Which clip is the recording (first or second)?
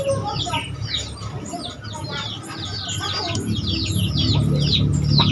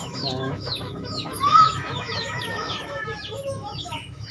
first